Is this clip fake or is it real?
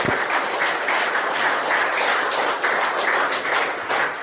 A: real